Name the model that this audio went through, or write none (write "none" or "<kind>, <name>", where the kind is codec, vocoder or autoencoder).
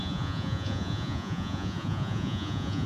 vocoder, Vocos